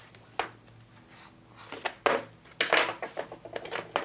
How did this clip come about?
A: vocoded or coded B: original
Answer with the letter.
B